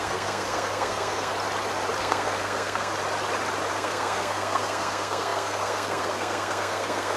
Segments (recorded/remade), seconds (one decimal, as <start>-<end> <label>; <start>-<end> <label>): 0.0-1.3 remade; 1.3-2.0 recorded; 2.0-2.9 remade; 2.9-3.7 recorded; 3.7-7.2 remade